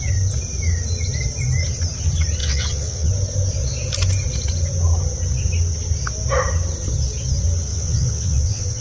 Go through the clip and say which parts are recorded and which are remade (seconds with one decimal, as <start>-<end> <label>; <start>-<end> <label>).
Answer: 0.0-2.4 recorded; 2.4-3.1 remade; 3.1-7.7 recorded; 7.7-8.8 remade